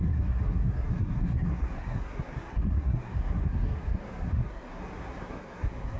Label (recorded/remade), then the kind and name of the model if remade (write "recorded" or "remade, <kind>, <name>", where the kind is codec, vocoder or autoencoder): remade, codec, SNAC